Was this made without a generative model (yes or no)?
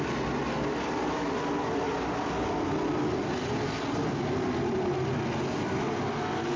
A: yes